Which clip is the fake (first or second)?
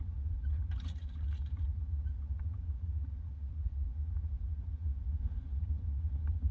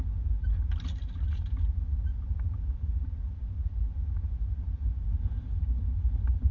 first